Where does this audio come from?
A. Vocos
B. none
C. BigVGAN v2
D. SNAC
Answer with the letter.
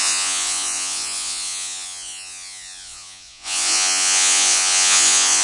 A